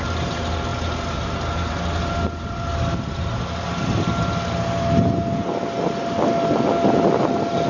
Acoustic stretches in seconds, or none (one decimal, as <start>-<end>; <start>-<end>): 0.0-7.7